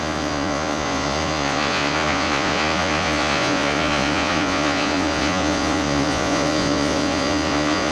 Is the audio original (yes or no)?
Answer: no